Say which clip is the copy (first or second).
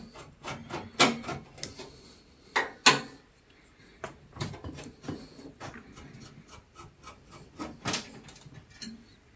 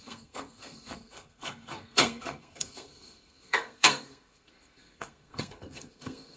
second